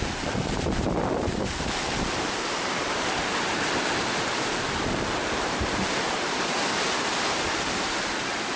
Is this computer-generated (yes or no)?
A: yes